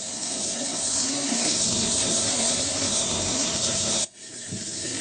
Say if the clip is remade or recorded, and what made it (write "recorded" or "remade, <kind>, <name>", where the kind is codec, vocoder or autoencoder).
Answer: remade, codec, SNAC